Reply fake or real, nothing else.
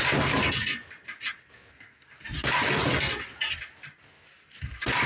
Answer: real